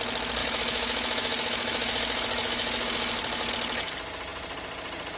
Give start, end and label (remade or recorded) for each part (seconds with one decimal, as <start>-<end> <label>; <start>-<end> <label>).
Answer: 0.0-0.4 recorded; 0.4-3.5 remade; 3.5-5.2 recorded